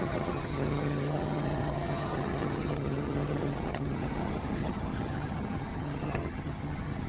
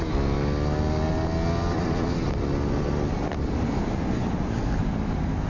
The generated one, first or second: first